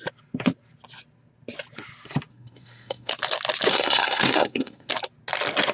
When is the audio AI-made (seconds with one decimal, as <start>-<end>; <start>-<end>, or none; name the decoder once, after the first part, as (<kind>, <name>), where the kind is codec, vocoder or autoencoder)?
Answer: 2.3-3.1 (codec, SNAC); 3.7-4.9